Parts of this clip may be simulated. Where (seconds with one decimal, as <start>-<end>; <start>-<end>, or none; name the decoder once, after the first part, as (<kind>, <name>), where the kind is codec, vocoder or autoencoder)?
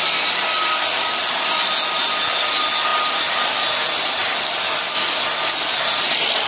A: none